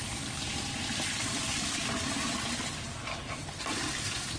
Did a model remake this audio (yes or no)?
no